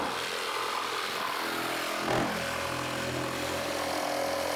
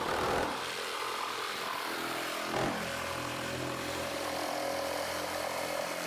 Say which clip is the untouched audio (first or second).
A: first